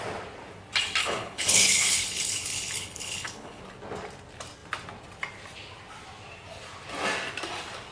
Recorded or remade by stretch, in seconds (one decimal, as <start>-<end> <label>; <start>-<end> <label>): 0.0-1.0 recorded; 1.0-3.6 remade; 3.6-7.9 recorded